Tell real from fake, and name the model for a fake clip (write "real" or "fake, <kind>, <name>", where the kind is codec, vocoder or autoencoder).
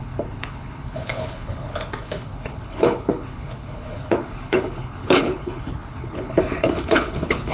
fake, codec, HILCodec